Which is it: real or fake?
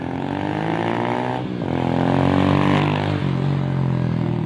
real